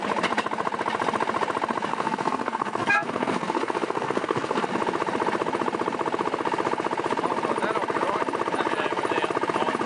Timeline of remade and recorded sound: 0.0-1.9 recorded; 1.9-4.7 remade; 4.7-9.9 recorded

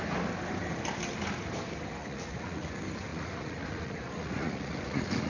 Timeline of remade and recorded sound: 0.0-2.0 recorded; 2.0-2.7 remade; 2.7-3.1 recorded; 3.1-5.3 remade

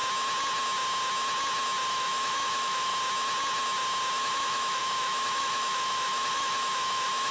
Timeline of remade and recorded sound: 0.0-1.9 recorded; 1.9-2.9 remade; 2.9-4.1 recorded; 4.1-7.3 remade